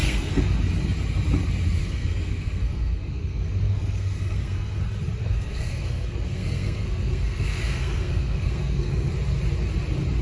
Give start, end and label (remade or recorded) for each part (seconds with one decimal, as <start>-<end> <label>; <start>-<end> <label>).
0.0-0.5 remade; 0.5-1.8 recorded; 1.8-4.8 remade; 4.8-5.2 recorded; 5.2-9.1 remade; 9.1-10.2 recorded